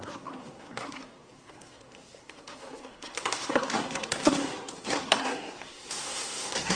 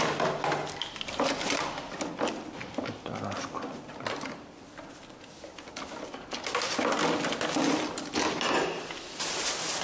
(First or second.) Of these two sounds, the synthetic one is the first